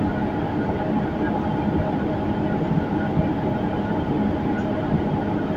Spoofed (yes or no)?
no